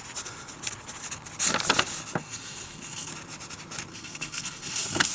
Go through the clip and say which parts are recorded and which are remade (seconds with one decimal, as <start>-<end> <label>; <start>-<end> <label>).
0.0-2.2 recorded; 2.2-3.1 remade; 3.1-3.9 recorded; 3.9-5.1 remade